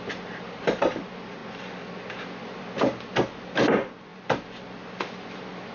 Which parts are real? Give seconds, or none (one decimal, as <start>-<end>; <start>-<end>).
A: 0.0-5.7